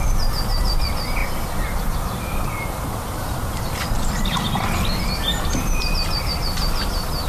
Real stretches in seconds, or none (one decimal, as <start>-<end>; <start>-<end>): 0.0-1.2; 4.4-7.3